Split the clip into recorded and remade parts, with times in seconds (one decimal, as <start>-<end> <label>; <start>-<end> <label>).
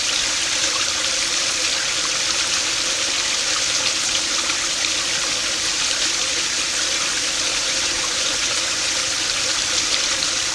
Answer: 0.0-7.5 recorded; 7.5-9.0 remade; 9.0-10.5 recorded